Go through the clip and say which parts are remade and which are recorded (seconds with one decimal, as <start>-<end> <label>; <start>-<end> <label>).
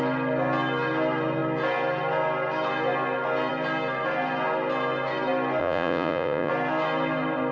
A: 0.0-5.6 recorded; 5.6-6.5 remade; 6.5-7.5 recorded